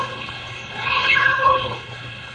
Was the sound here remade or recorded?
remade